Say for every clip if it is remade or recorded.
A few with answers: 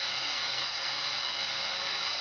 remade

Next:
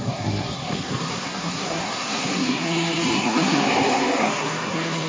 remade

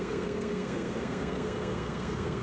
remade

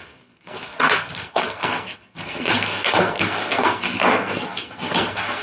remade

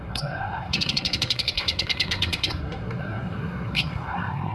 remade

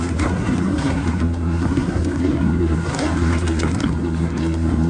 remade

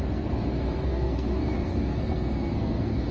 remade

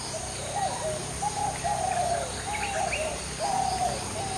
recorded